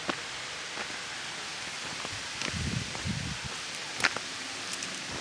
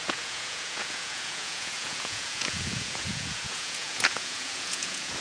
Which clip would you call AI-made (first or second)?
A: second